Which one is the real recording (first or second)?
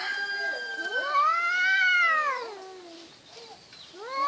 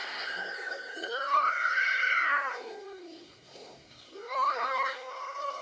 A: first